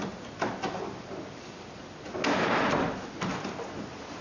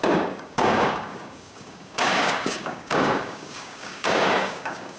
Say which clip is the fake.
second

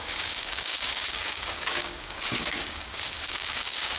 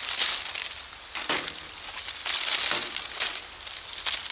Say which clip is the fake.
first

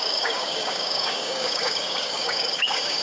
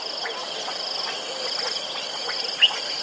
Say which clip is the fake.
first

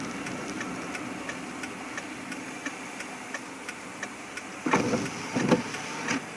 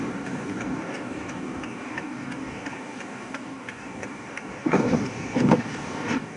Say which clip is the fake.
second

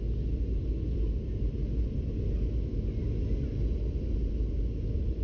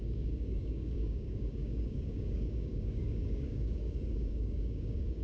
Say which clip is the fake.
second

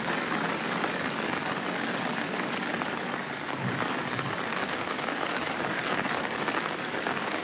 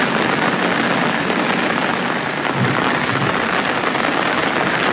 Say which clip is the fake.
first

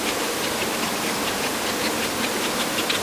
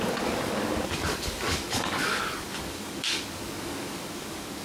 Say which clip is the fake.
second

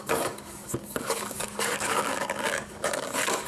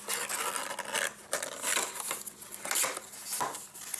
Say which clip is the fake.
first